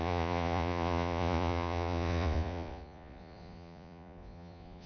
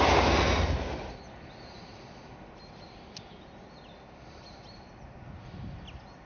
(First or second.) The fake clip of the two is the first